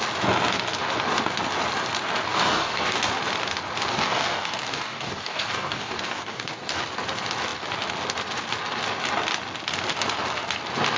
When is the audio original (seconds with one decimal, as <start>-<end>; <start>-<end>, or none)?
0.0-2.3; 3.1-3.9; 6.8-11.0

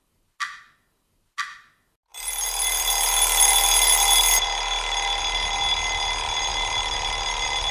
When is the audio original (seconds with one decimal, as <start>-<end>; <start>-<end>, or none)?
0.0-2.1; 5.2-6.5

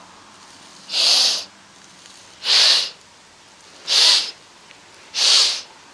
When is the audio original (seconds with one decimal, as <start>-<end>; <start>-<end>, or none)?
0.0-5.9